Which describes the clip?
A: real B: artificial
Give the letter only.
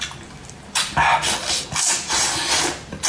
A